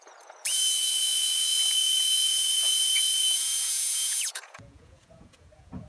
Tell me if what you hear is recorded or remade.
remade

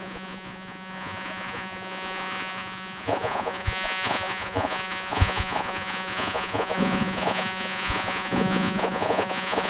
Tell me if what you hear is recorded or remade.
remade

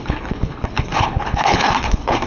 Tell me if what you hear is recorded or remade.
remade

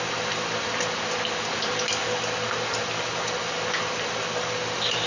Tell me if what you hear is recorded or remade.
recorded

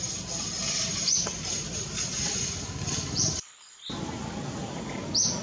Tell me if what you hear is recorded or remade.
recorded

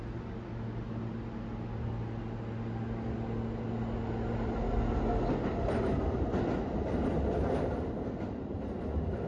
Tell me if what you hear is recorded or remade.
recorded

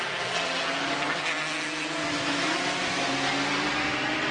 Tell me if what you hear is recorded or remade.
recorded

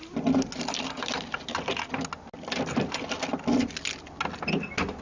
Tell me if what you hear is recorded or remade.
recorded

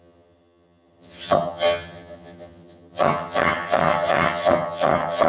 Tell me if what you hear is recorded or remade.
remade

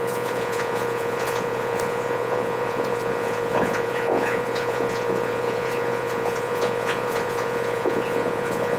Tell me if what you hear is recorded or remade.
remade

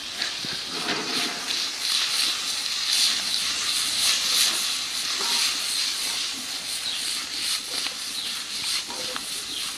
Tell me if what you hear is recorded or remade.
recorded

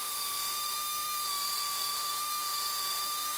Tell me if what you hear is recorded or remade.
remade